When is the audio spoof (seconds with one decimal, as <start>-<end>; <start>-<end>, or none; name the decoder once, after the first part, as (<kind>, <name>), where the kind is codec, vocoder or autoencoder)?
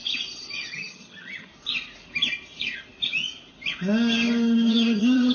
0.7-1.5 (vocoder, HiFi-GAN); 4.7-5.3